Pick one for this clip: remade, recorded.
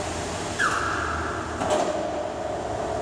recorded